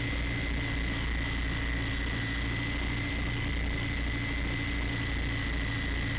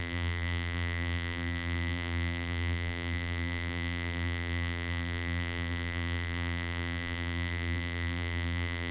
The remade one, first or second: second